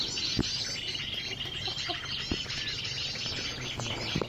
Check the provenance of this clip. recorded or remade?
recorded